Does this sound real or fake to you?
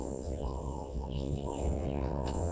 fake